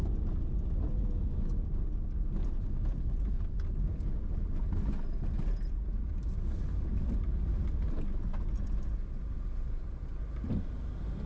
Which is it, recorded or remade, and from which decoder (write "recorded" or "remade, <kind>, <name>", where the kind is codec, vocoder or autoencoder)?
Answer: recorded